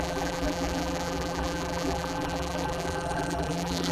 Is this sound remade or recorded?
remade